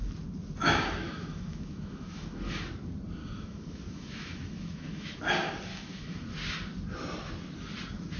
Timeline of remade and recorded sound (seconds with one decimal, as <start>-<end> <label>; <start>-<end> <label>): 0.0-0.6 recorded; 0.6-2.7 remade; 2.7-3.2 recorded; 3.2-5.2 remade; 5.2-5.7 recorded; 5.7-6.3 remade; 6.3-8.2 recorded